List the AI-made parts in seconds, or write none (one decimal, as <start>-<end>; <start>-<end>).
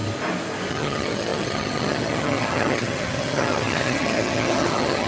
0.7-5.1